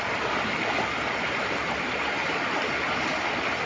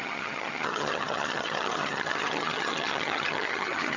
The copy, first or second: second